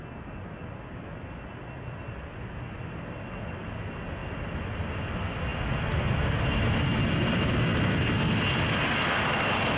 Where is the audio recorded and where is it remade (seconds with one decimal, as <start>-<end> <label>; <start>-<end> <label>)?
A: 0.0-9.8 recorded